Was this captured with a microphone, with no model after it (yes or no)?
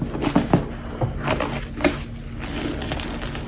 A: yes